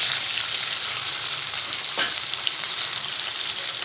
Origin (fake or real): fake